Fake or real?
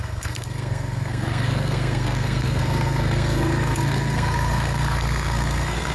fake